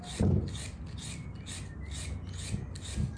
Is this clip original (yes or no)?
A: yes